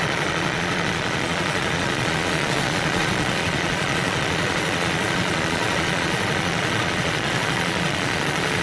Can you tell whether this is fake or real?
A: fake